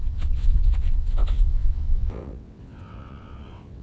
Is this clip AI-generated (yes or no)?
yes